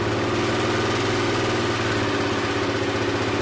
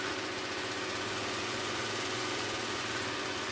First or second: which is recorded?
first